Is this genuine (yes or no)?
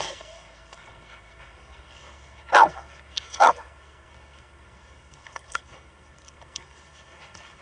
no